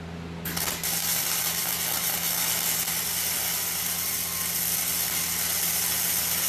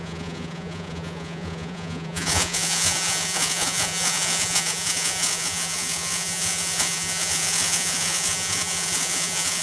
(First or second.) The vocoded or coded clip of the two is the second